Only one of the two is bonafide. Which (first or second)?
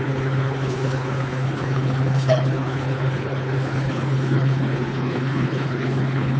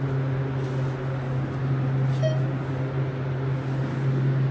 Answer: second